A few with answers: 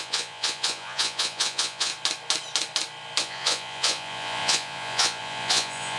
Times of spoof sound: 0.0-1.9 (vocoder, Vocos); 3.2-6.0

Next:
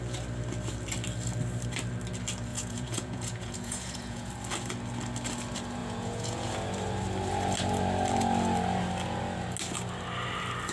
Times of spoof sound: 2.5-4.3 (vocoder, Vocos); 5.8-6.5

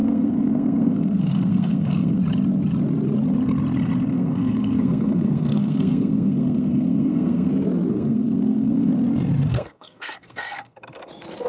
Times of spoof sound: 0.0-2.2 (codec, SNAC); 4.1-7.5; 7.9-8.9; 9.5-11.1

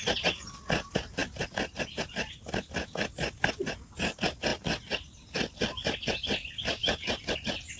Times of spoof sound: none

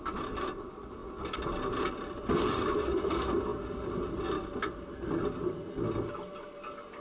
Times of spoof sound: none

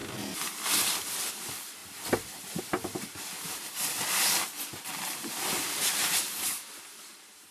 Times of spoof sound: 0.8-5.2 (vocoder, BigVGAN v2)

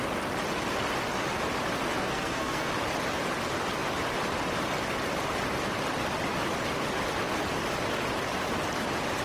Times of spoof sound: 2.0-2.7 (codec, SNAC)